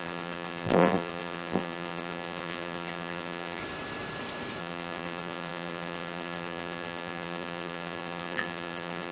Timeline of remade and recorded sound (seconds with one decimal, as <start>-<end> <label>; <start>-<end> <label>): 0.0-3.6 remade; 3.6-4.6 recorded; 4.6-9.1 remade